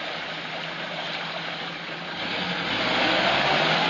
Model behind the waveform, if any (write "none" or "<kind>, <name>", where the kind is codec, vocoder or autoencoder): none